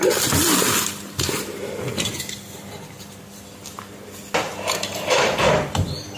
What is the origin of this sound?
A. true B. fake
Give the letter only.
A